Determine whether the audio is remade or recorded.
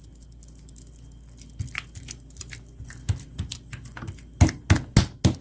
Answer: recorded